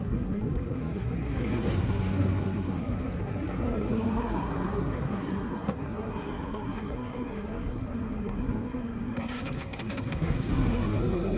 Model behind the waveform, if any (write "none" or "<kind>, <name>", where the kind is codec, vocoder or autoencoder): codec, SNAC